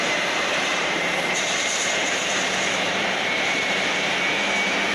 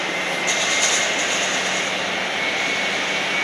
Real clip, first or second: second